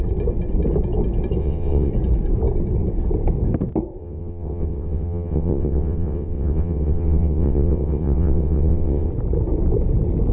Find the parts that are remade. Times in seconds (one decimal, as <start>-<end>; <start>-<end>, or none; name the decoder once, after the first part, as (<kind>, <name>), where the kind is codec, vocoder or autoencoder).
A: 1.4-1.9 (vocoder, WaveNeXt); 4.0-9.1